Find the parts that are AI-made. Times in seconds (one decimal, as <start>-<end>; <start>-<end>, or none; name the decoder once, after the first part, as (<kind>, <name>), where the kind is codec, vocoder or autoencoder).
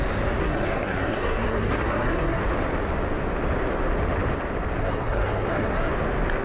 0.4-2.4 (codec, SNAC); 4.8-5.9